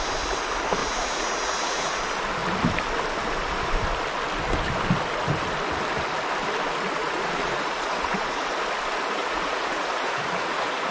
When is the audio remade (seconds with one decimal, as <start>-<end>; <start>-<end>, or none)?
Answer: 0.8-2.0; 7.0-8.4; 9.2-10.9